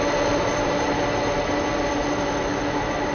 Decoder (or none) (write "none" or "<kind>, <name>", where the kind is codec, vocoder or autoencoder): none